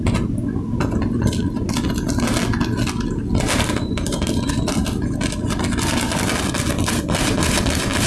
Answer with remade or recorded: recorded